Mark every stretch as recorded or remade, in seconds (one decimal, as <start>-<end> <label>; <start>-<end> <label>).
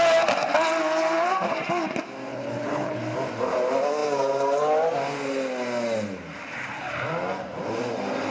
0.0-2.3 recorded; 2.3-3.0 remade; 3.0-8.3 recorded